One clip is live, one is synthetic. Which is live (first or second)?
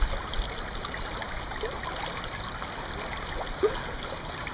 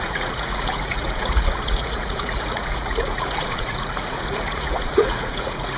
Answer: first